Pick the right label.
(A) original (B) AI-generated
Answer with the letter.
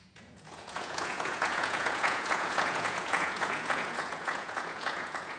B